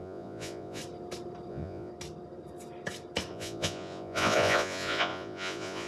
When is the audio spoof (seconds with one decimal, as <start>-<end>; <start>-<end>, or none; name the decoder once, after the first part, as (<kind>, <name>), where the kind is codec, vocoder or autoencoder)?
0.0-0.8 (vocoder, Vocos); 1.5-1.9; 3.3-5.9

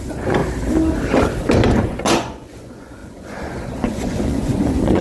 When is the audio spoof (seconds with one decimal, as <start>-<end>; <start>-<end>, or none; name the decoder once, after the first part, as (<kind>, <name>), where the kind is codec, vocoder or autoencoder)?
0.0-0.4 (vocoder, Vocos); 1.7-5.0

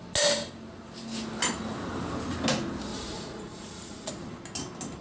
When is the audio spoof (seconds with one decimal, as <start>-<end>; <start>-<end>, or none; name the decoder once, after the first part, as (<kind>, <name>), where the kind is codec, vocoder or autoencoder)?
2.9-4.1 (vocoder, Vocos)

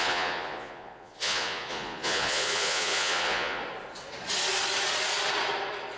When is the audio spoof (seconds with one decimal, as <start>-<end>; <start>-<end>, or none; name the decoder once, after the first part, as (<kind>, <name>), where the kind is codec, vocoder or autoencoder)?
0.0-3.6 (vocoder, Vocos)